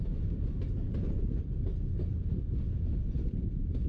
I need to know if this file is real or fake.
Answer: real